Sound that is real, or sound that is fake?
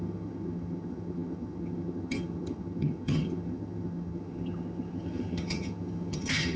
fake